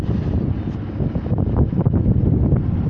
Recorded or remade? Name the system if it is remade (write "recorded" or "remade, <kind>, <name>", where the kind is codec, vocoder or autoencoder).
recorded